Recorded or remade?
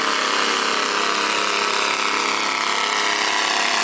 recorded